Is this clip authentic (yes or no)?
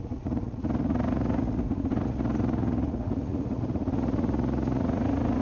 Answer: no